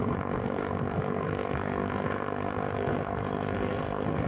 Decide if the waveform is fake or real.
fake